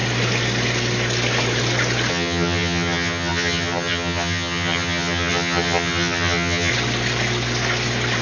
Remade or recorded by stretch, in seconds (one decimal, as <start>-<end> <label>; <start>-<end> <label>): 0.0-2.1 recorded; 2.1-6.7 remade; 6.7-8.2 recorded